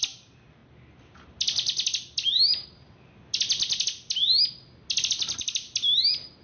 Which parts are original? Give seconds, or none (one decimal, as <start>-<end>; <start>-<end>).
0.0-6.4